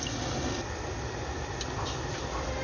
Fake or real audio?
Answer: real